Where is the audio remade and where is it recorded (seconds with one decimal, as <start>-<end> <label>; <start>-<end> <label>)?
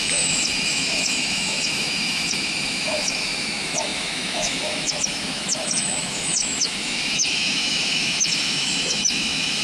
0.0-9.6 remade